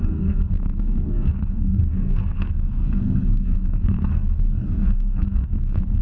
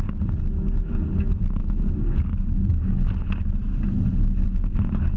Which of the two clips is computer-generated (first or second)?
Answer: first